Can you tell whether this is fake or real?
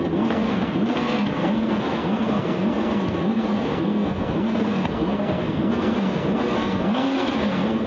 fake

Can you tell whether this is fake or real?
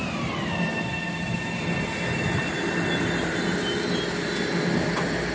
real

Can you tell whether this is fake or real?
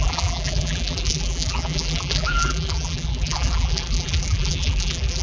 fake